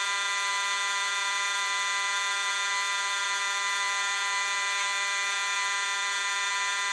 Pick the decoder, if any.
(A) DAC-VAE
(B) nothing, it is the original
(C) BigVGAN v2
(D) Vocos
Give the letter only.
D